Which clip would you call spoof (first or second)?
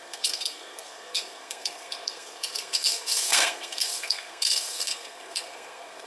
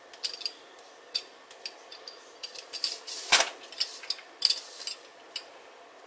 first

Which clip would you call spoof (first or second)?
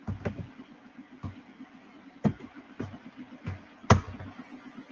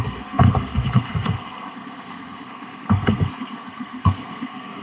second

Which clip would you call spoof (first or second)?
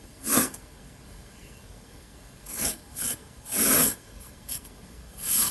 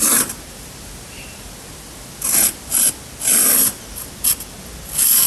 first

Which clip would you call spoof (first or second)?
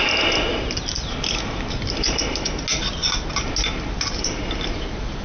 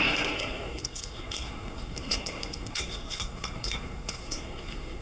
second